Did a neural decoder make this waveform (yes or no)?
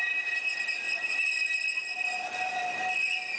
no